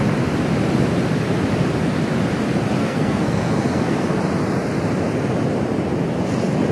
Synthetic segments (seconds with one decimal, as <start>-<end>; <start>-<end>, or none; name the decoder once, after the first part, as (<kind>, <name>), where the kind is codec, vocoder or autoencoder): 2.8-4.2 (codec, SNAC)